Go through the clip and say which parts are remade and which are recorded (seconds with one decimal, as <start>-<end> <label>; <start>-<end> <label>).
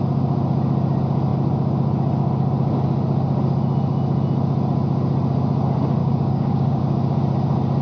0.0-6.0 recorded; 6.0-6.8 remade; 6.8-7.8 recorded